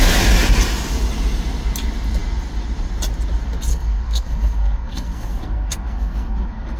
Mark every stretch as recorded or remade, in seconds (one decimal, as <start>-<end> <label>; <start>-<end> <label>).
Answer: 0.0-3.7 recorded; 3.7-6.8 remade